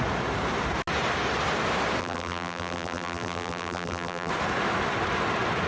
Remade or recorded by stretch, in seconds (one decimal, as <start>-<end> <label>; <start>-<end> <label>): 0.0-2.0 recorded; 2.0-4.3 remade; 4.3-5.7 recorded